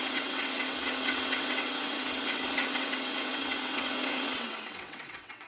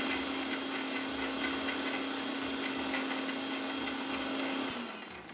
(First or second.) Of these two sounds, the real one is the second